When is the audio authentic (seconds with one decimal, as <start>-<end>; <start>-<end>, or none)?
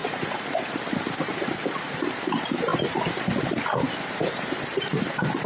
none